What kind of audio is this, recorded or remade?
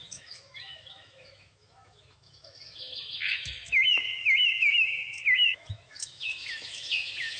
remade